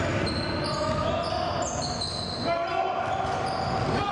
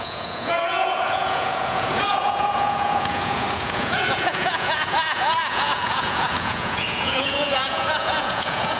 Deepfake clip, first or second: second